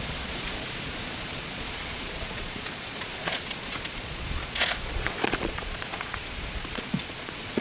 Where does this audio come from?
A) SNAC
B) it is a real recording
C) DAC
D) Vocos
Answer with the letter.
D